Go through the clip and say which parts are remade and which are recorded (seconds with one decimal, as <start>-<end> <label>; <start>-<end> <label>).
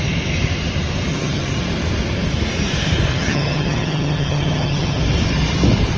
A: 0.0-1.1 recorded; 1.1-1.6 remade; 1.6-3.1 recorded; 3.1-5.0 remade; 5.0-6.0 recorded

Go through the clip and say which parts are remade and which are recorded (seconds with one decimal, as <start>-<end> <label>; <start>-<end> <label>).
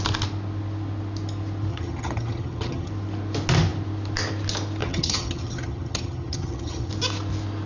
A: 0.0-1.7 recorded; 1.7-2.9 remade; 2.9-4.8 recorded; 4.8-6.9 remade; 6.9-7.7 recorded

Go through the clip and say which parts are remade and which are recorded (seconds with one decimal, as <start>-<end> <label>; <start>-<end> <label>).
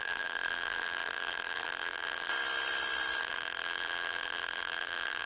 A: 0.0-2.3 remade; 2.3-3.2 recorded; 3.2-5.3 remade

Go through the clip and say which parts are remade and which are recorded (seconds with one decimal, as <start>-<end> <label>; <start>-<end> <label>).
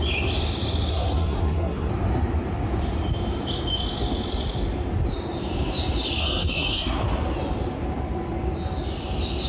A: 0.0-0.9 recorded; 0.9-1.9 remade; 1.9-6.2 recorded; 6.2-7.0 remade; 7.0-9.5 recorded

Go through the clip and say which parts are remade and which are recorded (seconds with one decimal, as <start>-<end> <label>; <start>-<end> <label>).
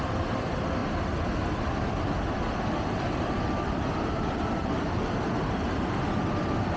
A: 0.0-6.8 recorded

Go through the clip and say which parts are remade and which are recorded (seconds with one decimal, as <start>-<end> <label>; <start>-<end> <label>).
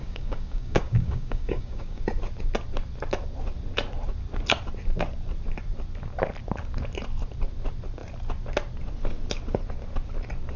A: 0.0-2.0 remade; 2.0-10.6 recorded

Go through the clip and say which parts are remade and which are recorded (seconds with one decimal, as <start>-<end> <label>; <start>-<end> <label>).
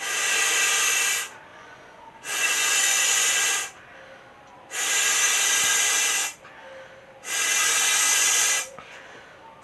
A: 0.0-1.5 recorded; 1.5-3.3 remade; 3.3-8.1 recorded; 8.1-9.0 remade; 9.0-9.6 recorded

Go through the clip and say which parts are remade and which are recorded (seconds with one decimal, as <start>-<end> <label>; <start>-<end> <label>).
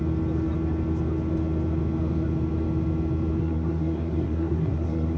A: 0.0-3.4 recorded; 3.4-5.2 remade